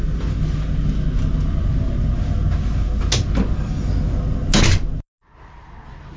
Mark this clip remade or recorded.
recorded